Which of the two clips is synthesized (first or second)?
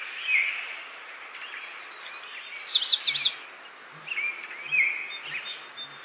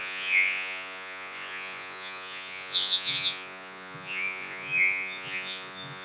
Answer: second